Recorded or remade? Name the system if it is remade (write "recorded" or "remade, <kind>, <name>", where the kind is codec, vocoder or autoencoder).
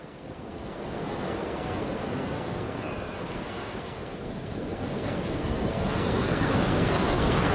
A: remade, codec, SNAC